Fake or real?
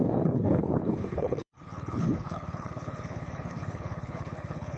fake